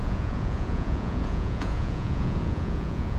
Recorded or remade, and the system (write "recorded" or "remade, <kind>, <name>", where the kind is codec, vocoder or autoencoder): remade, vocoder, Vocos